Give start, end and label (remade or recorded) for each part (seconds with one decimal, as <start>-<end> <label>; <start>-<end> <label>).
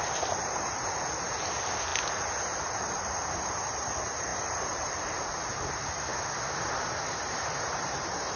0.0-6.1 remade; 6.1-7.0 recorded; 7.0-8.4 remade